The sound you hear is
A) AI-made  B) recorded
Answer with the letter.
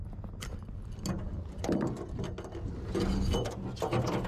B